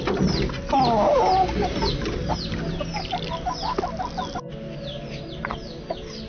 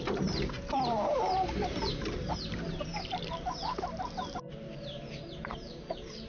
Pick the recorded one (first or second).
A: first